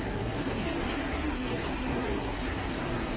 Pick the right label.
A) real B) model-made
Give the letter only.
B